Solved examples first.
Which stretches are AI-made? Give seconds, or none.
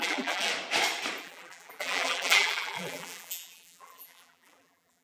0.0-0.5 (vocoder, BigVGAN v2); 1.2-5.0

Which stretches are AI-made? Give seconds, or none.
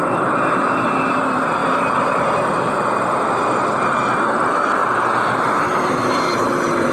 0.0-6.9 (vocoder, BigVGAN v2)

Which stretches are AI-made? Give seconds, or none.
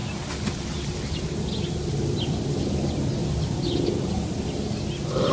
none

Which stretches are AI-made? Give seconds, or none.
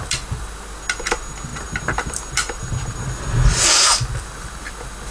none